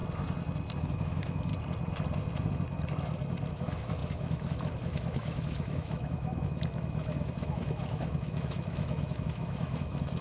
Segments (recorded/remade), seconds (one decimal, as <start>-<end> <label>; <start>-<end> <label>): 0.0-0.8 recorded; 0.8-1.5 remade; 1.5-3.5 recorded; 3.5-10.2 remade